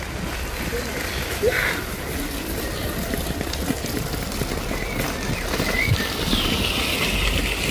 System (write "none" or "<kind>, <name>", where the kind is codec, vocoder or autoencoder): none